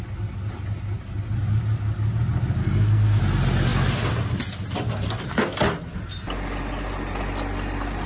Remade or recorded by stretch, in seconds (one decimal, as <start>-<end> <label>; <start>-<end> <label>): 0.0-2.6 recorded; 2.6-3.2 remade; 3.2-8.1 recorded